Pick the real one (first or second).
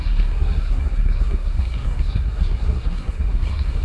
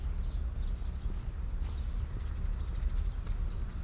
second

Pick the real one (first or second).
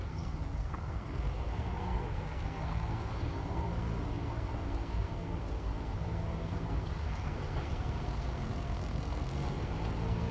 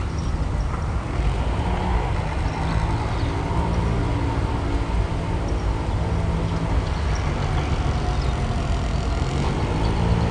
second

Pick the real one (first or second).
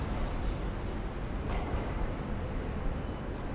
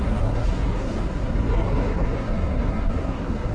first